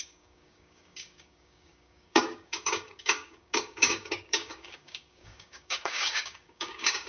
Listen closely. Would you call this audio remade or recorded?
remade